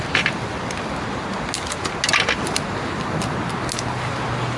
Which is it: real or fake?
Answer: real